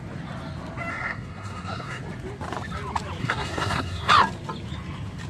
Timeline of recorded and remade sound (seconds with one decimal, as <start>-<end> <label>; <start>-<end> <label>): 0.0-0.9 recorded; 0.9-2.0 remade; 2.0-3.2 recorded; 3.2-4.1 remade; 4.1-5.3 recorded

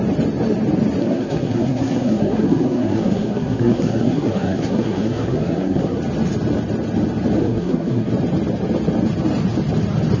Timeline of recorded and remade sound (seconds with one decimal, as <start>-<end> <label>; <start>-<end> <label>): 0.0-1.0 recorded; 1.0-6.0 remade; 6.0-7.4 recorded; 7.4-8.1 remade; 8.1-10.2 recorded

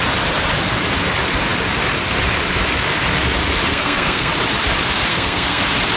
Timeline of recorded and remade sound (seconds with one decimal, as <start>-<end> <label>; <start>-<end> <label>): 0.0-3.7 recorded; 3.7-4.3 remade; 4.3-5.1 recorded; 5.1-5.6 remade; 5.6-6.0 recorded

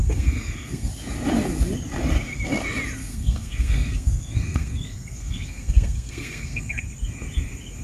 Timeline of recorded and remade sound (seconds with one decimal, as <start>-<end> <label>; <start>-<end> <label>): 0.0-0.9 remade; 0.9-3.0 recorded; 3.0-6.8 remade; 6.8-7.8 recorded

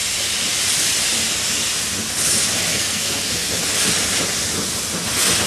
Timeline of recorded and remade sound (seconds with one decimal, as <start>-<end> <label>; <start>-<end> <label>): 0.0-2.7 recorded; 2.7-3.6 remade; 3.6-5.5 recorded

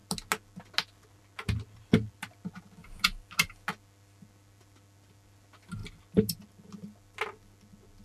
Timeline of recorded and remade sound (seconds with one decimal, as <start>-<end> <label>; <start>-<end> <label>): 0.0-8.0 recorded